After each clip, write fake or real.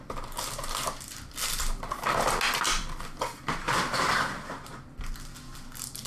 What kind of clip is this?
real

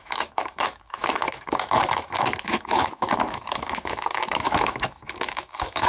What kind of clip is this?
fake